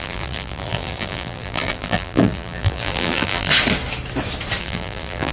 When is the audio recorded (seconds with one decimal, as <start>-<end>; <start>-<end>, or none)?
3.5-4.6